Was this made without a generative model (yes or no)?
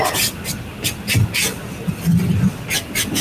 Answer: yes